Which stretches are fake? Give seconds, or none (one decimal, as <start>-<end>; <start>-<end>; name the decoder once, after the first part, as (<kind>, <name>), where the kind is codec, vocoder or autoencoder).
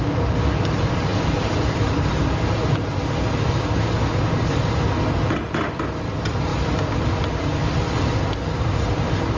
1.1-4.8 (vocoder, BigVGAN v2)